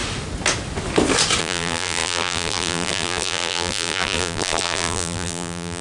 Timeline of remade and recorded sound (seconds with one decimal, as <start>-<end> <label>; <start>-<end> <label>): 0.0-1.4 recorded; 1.4-5.8 remade